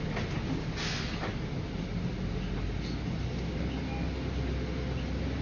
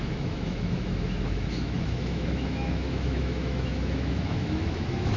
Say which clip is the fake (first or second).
second